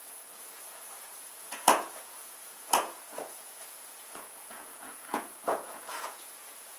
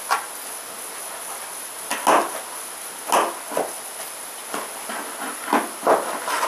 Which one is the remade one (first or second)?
first